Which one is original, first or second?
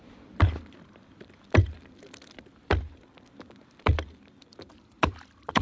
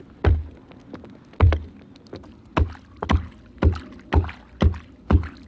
second